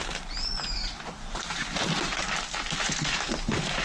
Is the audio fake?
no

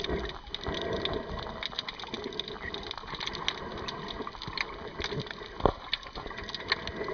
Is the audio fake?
no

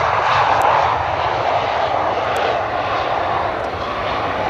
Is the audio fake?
no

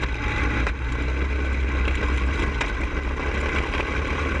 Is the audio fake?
no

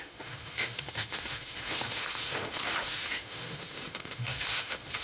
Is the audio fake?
yes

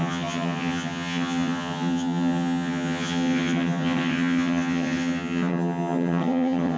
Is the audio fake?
yes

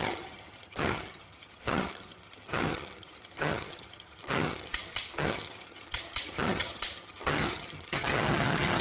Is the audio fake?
yes